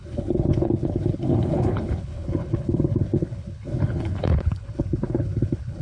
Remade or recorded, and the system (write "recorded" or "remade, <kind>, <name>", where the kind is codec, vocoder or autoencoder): remade, codec, HILCodec